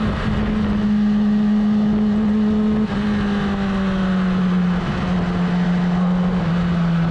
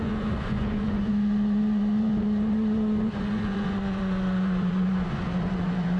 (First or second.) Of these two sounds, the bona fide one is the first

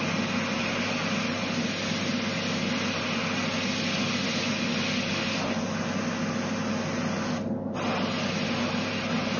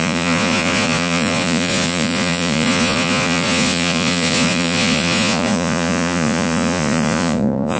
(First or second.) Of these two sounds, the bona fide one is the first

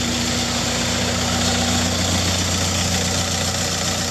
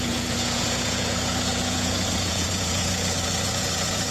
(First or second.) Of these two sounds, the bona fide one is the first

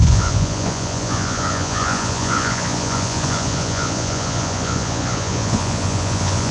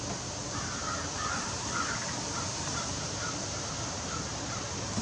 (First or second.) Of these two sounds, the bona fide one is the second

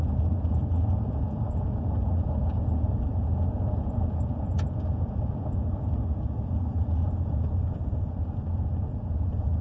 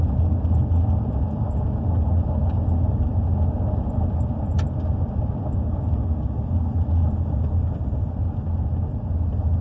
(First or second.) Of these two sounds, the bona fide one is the second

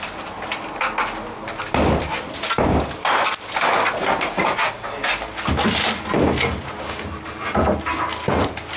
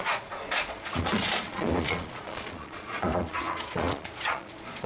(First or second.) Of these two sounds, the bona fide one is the first